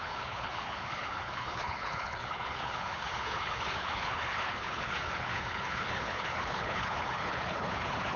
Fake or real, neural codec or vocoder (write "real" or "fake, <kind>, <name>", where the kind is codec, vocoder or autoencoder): fake, codec, HILCodec